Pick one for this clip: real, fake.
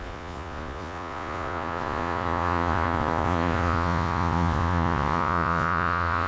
fake